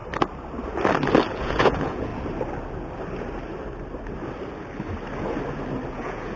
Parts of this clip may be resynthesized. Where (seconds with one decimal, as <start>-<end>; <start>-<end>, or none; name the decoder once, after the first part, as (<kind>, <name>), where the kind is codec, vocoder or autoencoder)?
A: 1.4-2.1 (vocoder, Vocos); 5.9-6.4